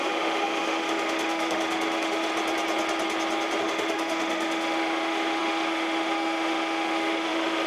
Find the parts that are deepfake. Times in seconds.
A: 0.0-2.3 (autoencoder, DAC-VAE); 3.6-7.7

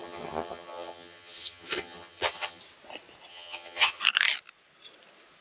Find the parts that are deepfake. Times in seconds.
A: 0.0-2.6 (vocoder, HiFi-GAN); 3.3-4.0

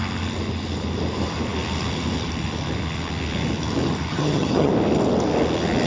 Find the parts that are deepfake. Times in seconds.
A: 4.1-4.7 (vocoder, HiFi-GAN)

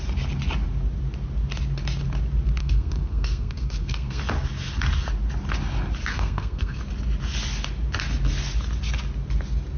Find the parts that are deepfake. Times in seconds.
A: 2.6-4.2 (codec, SNAC); 6.1-6.8